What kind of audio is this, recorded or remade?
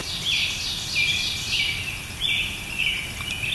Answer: recorded